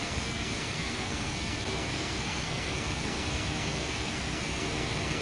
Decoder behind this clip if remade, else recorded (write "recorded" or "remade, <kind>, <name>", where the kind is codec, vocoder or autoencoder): remade, codec, SNAC